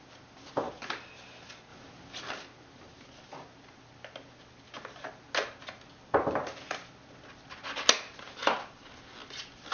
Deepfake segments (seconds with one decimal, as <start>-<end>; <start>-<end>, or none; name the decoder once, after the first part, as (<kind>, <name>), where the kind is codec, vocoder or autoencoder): none